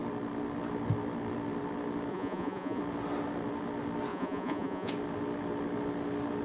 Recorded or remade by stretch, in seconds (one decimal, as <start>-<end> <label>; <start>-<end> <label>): 0.0-2.1 recorded; 2.1-2.8 remade; 2.8-4.1 recorded; 4.1-4.9 remade; 4.9-6.4 recorded